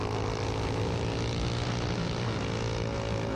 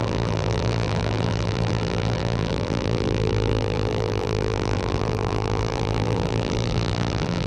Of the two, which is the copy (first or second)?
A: second